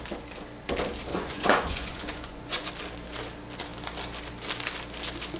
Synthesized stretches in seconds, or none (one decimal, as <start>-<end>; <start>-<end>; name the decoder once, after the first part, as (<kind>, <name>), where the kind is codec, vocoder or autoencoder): 1.1-2.7 (vocoder, Vocos)